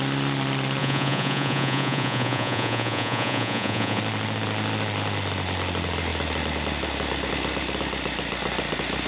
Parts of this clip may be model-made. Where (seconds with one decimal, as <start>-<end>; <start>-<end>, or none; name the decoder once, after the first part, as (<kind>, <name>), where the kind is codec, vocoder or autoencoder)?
0.8-4.0 (vocoder, Vocos)